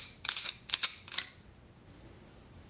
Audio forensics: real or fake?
real